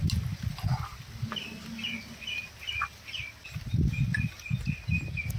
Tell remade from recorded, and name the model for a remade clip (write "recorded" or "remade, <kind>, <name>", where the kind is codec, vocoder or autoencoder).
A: recorded